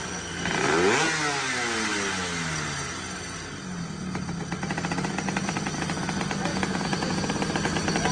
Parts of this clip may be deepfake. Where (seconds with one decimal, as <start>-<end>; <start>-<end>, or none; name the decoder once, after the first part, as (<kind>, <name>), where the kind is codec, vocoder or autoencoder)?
6.5-7.3 (vocoder, Vocos)